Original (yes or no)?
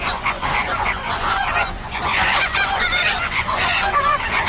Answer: no